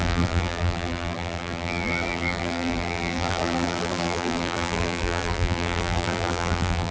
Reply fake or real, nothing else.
fake